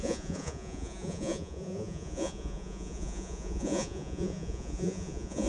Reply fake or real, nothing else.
fake